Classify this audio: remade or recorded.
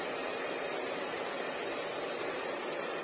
recorded